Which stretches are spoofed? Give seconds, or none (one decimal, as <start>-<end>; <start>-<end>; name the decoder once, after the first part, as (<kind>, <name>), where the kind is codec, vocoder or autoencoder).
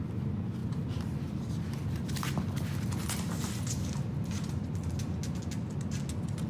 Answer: none